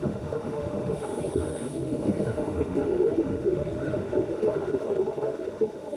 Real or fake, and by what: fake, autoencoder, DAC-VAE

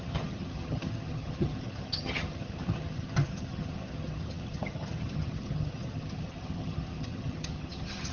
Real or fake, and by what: fake, vocoder, HiFi-GAN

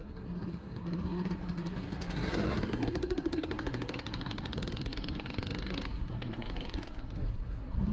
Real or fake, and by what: fake, codec, SNAC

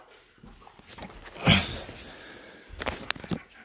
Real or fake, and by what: real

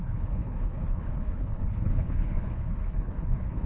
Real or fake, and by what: fake, codec, HILCodec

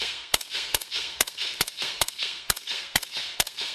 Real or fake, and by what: fake, codec, SNAC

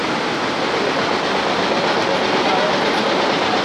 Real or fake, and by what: real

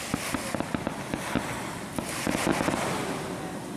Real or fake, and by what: real